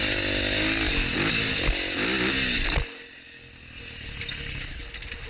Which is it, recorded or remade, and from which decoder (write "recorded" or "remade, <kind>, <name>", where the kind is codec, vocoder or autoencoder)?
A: recorded